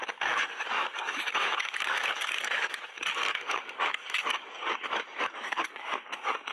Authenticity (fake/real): fake